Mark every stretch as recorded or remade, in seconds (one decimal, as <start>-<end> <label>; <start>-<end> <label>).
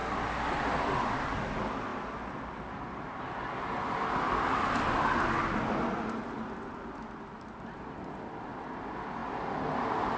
0.0-10.2 recorded